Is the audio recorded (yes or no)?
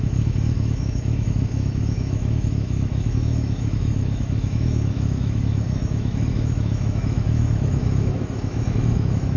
no